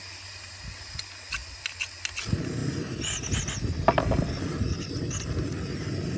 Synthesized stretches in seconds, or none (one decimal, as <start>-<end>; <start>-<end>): none